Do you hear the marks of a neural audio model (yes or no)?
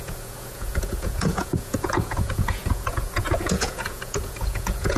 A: yes